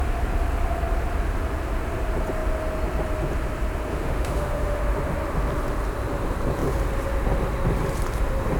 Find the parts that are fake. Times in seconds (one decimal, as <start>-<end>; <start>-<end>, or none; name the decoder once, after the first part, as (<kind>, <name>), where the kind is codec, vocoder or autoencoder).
3.9-4.8 (autoencoder, DAC-VAE)